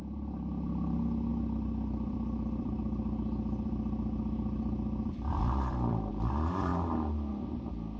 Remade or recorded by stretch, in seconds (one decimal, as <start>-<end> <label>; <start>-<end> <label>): 0.0-1.3 recorded; 1.3-6.1 remade; 6.1-6.7 recorded; 6.7-7.3 remade; 7.3-8.0 recorded